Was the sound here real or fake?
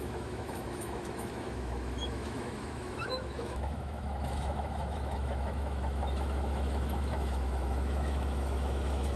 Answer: fake